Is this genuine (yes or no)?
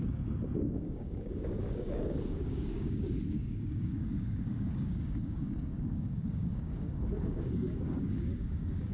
no